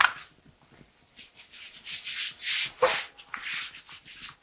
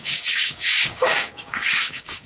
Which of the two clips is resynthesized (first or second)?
second